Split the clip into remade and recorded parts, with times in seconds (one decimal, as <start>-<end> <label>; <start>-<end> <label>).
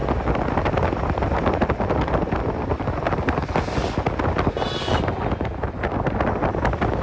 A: 0.0-7.0 recorded